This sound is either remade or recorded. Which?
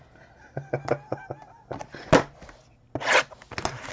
recorded